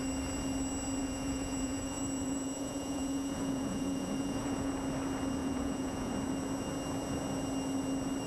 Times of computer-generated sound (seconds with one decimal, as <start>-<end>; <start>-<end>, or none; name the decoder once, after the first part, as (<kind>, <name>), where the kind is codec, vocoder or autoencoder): 1.0-4.7 (vocoder, Vocos); 5.4-6.1